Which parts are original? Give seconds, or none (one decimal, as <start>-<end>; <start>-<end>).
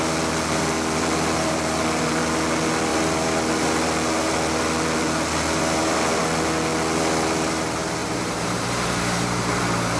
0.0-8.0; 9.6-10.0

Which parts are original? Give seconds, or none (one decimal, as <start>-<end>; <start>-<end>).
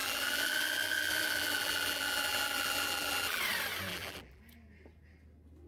3.4-3.9; 4.4-5.7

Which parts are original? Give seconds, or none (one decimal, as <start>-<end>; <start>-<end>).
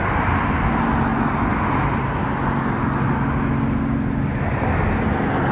0.0-5.5